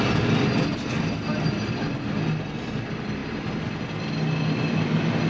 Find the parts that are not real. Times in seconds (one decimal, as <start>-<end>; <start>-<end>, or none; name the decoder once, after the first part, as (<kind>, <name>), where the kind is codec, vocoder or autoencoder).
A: none